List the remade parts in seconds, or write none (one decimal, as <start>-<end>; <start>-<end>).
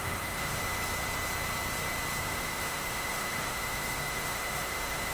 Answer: 0.0-0.6; 2.2-5.1